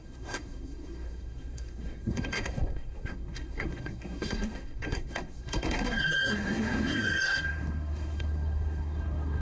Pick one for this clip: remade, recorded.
remade